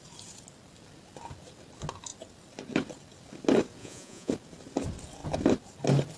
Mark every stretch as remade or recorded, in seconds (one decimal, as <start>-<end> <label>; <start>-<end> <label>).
0.0-3.8 recorded; 3.8-4.3 remade; 4.3-6.2 recorded